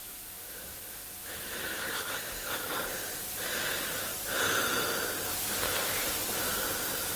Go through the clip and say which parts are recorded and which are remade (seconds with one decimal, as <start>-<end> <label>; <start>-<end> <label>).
0.0-2.7 remade; 2.7-7.2 recorded